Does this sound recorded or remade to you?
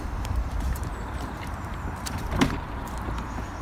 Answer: remade